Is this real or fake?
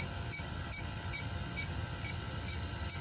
real